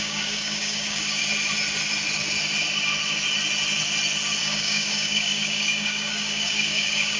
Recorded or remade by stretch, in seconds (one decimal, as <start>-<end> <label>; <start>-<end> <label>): 0.0-1.2 remade; 1.2-4.4 recorded; 4.4-7.2 remade